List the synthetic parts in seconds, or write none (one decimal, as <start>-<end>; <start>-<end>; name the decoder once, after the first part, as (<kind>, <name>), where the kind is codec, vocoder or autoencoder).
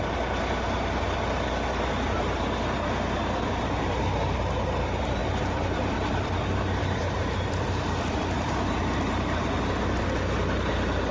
5.2-9.6 (vocoder, BigVGAN v2)